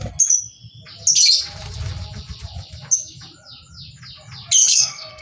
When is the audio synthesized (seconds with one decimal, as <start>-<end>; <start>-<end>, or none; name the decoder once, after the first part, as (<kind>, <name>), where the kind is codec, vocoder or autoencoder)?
4.6-5.2 (codec, SNAC)